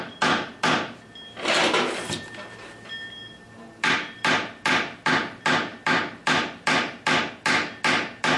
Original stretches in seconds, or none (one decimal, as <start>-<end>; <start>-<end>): 0.0-5.7; 7.3-8.4